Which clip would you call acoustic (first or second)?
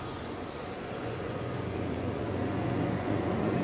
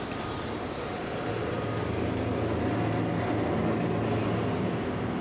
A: second